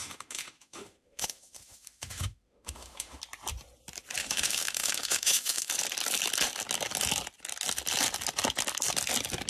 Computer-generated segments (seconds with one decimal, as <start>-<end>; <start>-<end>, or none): 0.0-3.2; 4.2-5.7